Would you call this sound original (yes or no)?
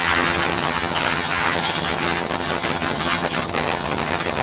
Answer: no